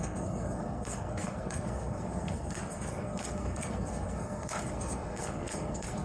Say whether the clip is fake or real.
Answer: fake